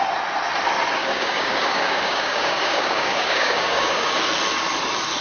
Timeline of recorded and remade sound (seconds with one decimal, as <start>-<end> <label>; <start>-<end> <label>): 0.0-1.0 recorded; 1.0-4.1 remade; 4.1-5.2 recorded